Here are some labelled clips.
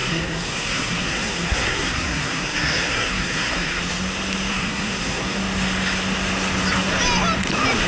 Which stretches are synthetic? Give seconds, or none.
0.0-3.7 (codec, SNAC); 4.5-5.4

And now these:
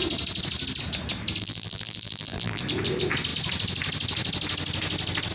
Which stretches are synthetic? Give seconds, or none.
1.4-2.6 (vocoder, BigVGAN v2)

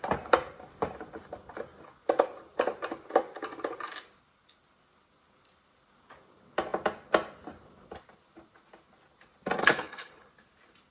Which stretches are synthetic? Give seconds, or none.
9.6-10.3 (codec, HILCodec)

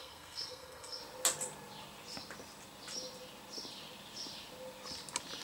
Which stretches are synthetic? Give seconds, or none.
0.0-1.0 (codec, SNAC)

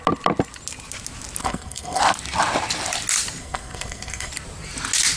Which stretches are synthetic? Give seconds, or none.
1.4-2.0 (codec, SNAC); 3.4-4.3

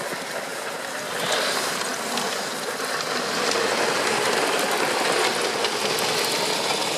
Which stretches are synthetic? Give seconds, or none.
none

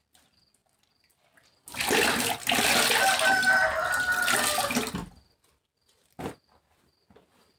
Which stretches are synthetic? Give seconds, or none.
0.6-4.2 (vocoder, BigVGAN v2)

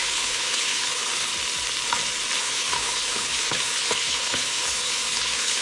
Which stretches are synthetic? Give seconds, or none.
0.0-1.3 (codec, HILCodec); 2.4-5.6